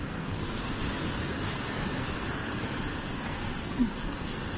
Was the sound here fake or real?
fake